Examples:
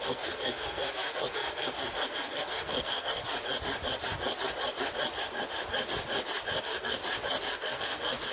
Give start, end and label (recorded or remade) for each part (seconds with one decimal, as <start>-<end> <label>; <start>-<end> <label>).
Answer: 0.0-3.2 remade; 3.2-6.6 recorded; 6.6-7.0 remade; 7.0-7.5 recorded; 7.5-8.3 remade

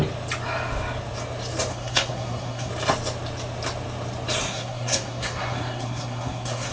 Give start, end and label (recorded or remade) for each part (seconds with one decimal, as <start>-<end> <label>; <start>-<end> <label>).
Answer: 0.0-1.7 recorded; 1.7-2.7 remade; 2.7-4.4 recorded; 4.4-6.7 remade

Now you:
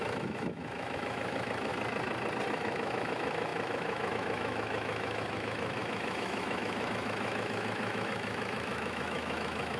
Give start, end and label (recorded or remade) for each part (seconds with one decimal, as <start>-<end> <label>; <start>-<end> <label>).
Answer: 0.0-1.7 remade; 1.7-2.5 recorded; 2.5-9.8 remade

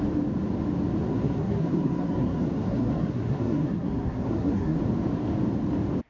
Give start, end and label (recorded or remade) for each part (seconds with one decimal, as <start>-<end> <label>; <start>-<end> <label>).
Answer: 0.0-1.1 recorded; 1.1-4.8 remade; 4.8-6.1 recorded

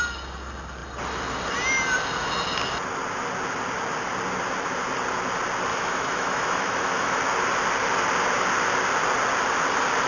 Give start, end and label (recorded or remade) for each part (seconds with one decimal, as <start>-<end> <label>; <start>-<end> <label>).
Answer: 0.0-5.7 recorded; 5.7-7.2 remade; 7.2-10.1 recorded

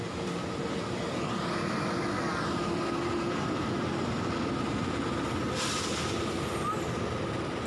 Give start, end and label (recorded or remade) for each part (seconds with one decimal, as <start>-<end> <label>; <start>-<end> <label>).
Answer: 0.0-7.7 recorded

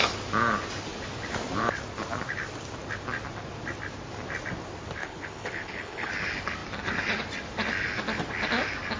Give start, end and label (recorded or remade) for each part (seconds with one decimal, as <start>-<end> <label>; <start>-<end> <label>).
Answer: 0.0-5.0 recorded; 5.0-6.1 remade; 6.1-9.0 recorded